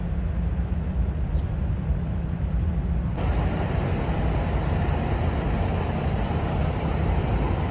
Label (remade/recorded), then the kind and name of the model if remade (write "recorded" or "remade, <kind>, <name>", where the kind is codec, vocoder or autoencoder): recorded